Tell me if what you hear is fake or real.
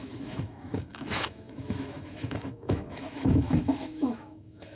fake